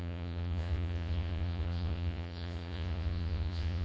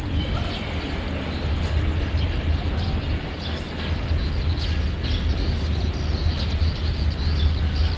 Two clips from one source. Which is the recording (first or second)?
second